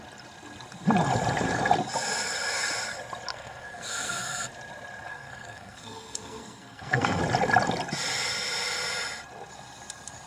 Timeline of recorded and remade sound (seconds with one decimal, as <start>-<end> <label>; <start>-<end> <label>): 0.0-3.3 recorded; 3.3-4.5 remade; 4.5-5.1 recorded; 5.1-7.2 remade; 7.2-10.3 recorded